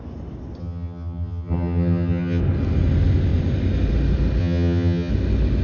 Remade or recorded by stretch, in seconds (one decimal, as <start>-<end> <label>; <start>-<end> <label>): 0.0-0.6 recorded; 0.6-2.4 remade; 2.4-4.4 recorded; 4.4-5.1 remade; 5.1-5.6 recorded